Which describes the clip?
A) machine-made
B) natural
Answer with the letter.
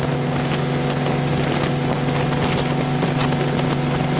B